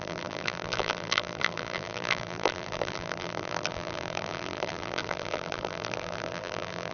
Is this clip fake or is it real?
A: fake